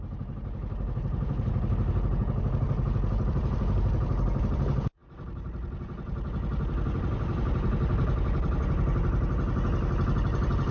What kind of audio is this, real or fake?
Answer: real